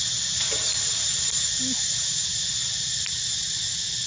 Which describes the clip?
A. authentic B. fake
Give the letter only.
A